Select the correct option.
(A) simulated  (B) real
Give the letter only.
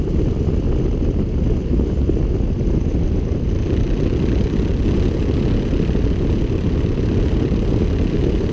B